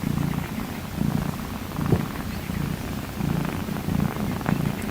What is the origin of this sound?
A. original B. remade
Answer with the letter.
A